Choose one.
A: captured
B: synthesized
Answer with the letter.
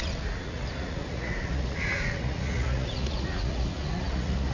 B